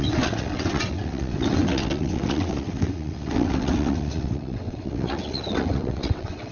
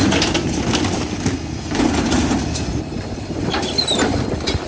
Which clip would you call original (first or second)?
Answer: second